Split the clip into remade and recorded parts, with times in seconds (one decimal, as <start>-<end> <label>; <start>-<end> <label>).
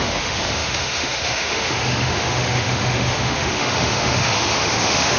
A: 0.0-5.2 remade